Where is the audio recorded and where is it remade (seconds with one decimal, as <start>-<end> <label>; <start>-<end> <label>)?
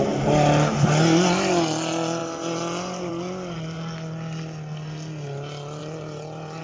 0.0-2.2 recorded; 2.2-3.1 remade; 3.1-5.8 recorded; 5.8-6.6 remade